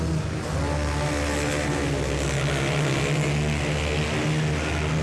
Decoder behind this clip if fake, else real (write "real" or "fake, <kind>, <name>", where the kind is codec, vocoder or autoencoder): real